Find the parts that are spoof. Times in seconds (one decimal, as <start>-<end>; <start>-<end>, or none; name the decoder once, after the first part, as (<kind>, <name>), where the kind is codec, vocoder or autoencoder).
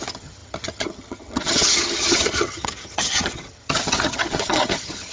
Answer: 0.0-5.1 (vocoder, HiFi-GAN)